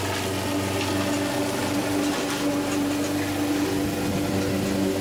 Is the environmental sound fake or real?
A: real